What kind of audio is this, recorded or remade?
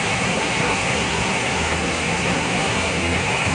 remade